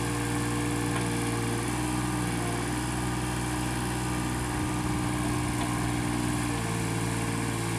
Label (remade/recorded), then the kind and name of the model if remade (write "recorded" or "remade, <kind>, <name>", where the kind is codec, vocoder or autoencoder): recorded